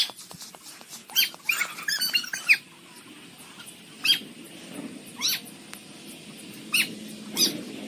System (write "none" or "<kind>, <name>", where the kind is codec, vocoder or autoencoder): none